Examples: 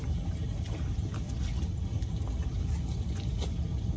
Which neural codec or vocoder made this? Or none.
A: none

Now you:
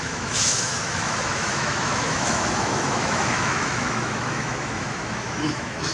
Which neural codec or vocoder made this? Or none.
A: autoencoder, DAC-VAE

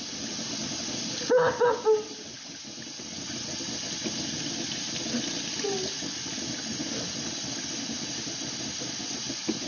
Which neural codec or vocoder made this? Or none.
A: none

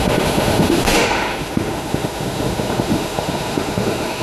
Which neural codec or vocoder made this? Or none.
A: autoencoder, DAC-VAE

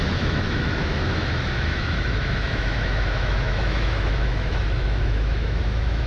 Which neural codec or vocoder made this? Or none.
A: autoencoder, DAC-VAE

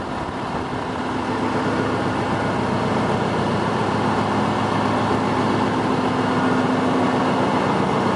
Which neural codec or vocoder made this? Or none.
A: none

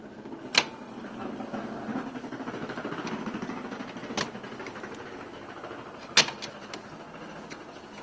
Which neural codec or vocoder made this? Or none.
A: none